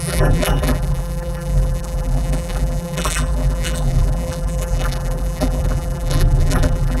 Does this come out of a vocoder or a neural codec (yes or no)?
yes